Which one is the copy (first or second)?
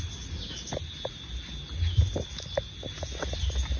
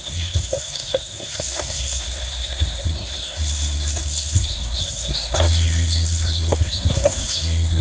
second